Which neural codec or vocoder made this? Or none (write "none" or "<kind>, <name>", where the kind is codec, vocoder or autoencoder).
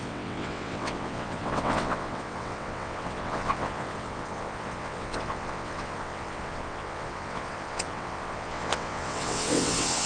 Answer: vocoder, WaveNeXt